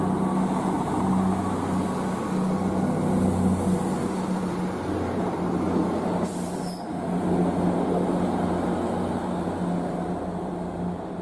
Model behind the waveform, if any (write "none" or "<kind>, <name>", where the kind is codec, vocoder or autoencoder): none